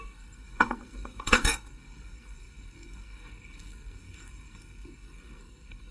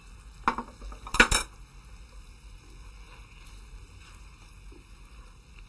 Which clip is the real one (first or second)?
second